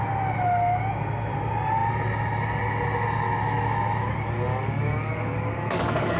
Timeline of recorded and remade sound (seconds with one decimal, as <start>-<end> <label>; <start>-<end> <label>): 0.0-4.5 recorded; 4.5-6.2 remade